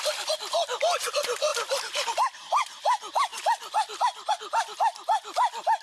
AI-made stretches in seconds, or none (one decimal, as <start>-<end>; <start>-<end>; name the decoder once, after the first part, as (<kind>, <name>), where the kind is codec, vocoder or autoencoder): none